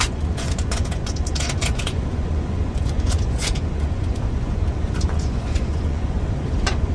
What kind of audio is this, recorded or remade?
remade